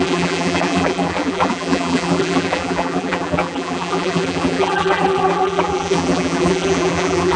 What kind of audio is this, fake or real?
fake